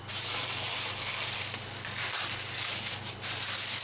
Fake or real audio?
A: real